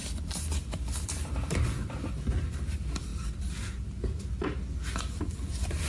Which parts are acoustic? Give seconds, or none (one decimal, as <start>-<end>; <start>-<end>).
3.1-5.0